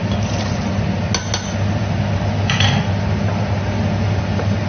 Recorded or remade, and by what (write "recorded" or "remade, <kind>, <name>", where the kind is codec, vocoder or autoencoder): recorded